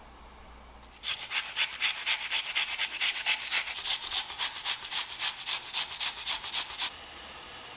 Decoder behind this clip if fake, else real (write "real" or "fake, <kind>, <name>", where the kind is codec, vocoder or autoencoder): real